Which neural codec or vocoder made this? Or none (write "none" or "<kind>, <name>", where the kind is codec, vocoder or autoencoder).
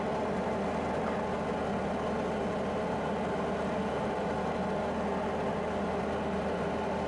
none